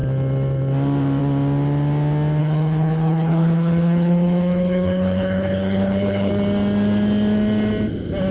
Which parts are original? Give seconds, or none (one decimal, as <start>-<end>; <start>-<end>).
0.0-2.4; 6.3-8.3